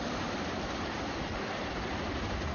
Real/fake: real